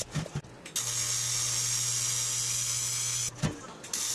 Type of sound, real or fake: real